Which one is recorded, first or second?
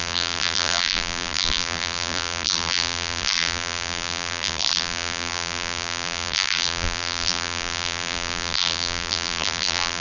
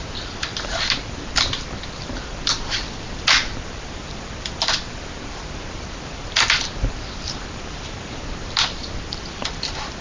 second